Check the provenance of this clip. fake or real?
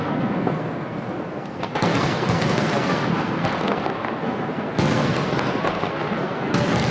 fake